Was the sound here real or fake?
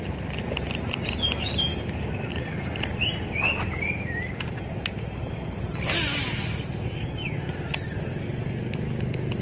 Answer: real